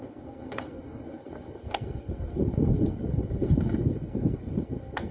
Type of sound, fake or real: fake